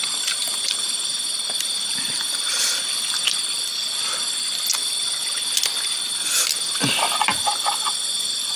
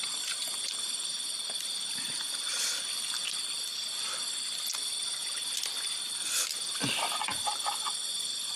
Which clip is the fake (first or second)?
second